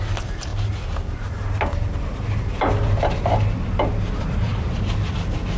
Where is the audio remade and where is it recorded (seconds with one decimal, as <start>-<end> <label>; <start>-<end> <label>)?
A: 0.0-0.5 remade; 0.5-3.9 recorded; 3.9-5.6 remade